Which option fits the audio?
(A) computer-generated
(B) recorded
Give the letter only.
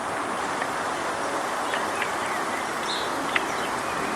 B